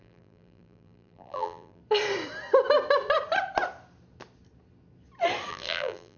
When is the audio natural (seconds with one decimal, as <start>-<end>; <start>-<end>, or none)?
1.8-5.5